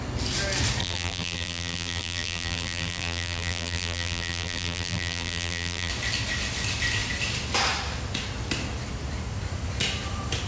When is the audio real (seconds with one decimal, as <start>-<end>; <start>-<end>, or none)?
0.0-0.8; 5.9-10.5